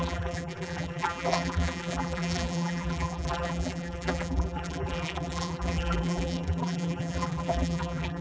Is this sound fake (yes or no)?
yes